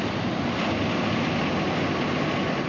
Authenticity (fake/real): real